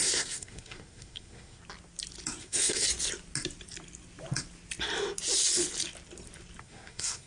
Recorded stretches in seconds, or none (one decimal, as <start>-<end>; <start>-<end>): 1.6-2.4; 2.9-6.6